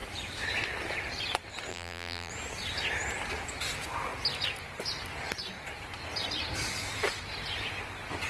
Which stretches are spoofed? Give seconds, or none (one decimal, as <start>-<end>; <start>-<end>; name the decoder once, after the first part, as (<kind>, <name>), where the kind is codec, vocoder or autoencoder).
1.7-2.3 (vocoder, BigVGAN v2)